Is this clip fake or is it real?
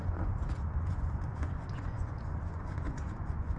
fake